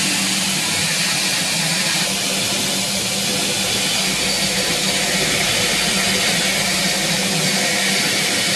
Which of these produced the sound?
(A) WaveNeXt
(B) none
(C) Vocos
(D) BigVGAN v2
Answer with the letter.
B